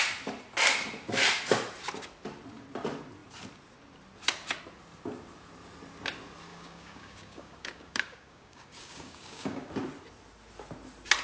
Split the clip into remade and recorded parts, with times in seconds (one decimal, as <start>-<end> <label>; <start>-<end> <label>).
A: 0.0-6.5 recorded; 6.5-9.7 remade; 9.7-11.2 recorded